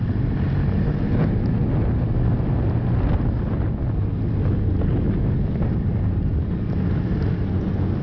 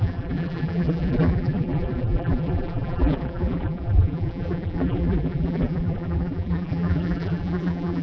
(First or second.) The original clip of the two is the first